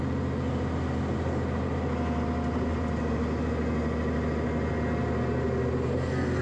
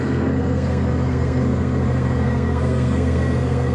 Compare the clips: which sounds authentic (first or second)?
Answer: first